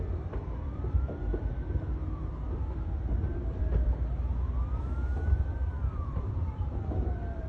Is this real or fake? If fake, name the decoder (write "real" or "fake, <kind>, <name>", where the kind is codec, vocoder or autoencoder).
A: fake, vocoder, BigVGAN v2